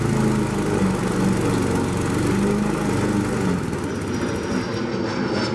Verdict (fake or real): real